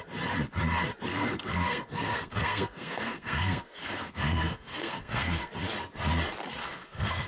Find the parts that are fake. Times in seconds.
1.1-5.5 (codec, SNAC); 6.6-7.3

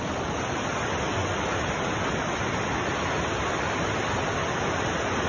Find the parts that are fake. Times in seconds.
none

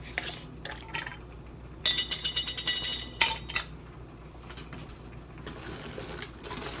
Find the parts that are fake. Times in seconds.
none

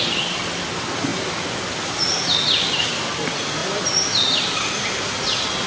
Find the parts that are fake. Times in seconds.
none

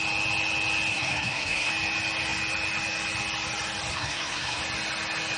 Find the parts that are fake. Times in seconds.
0.9-1.7 (codec, SNAC); 3.9-4.6

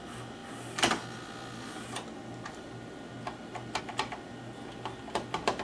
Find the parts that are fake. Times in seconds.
none